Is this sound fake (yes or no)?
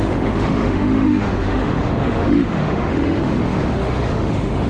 yes